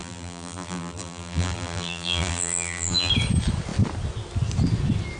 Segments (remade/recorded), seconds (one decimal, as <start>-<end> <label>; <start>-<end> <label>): 0.0-3.1 remade; 3.1-5.2 recorded